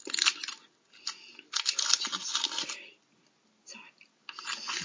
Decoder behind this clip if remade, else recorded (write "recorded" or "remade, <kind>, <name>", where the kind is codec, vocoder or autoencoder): recorded